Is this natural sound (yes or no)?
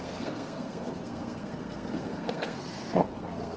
no